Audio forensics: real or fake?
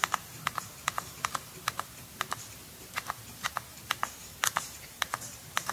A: fake